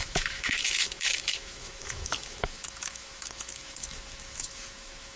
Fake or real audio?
fake